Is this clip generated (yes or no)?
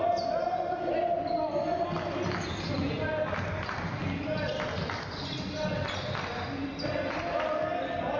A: no